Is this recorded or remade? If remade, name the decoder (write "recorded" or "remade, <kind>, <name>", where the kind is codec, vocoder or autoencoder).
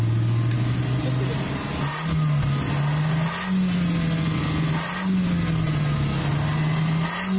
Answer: recorded